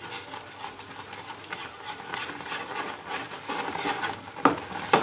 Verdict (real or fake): real